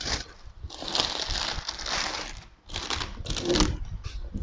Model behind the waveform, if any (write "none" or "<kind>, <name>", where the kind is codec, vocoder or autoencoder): none